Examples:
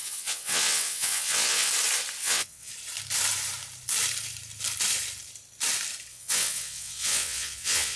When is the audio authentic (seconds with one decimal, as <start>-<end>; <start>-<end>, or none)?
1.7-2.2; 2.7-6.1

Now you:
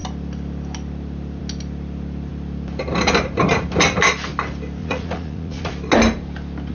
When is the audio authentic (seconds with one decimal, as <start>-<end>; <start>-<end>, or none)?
0.0-4.8; 5.7-6.7

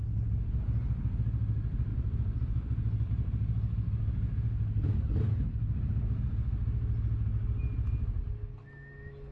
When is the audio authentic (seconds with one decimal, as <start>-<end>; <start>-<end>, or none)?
0.0-9.3

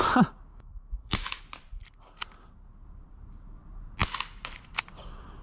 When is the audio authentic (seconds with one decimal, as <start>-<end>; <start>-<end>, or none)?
0.0-0.5; 1.4-5.4

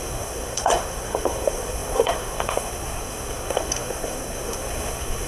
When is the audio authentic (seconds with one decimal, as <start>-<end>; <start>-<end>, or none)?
none

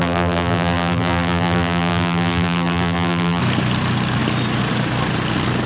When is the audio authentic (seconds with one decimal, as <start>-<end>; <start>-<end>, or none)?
3.4-5.7